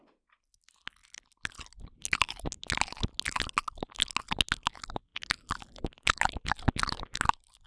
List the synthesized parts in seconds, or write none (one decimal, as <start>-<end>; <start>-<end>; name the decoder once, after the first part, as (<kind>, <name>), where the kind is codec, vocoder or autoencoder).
none

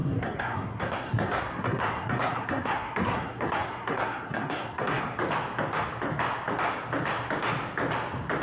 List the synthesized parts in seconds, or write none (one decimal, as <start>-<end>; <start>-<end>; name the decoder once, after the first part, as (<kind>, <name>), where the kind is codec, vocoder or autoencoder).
0.0-5.0 (codec, SNAC)

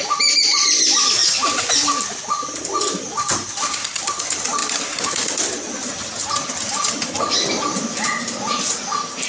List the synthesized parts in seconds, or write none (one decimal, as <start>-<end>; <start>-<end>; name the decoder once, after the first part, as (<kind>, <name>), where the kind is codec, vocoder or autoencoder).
none

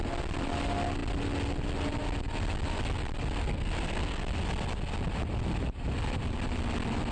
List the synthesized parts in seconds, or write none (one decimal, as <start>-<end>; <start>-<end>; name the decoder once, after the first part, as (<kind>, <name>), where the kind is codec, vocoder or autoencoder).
3.4-4.2 (codec, SNAC)

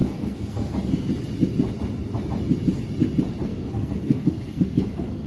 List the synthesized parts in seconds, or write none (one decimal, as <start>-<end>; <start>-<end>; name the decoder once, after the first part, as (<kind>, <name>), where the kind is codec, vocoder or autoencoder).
0.0-1.1 (codec, SNAC); 3.4-5.3